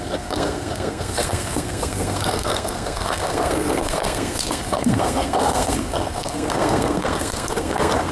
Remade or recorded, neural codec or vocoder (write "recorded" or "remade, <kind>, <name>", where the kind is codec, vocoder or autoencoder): remade, codec, SNAC